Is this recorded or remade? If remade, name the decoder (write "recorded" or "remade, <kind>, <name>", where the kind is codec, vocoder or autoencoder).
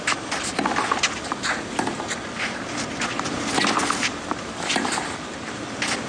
recorded